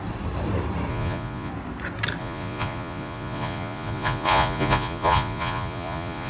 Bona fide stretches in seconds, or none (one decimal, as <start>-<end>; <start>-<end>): 0.0-0.9; 1.5-2.2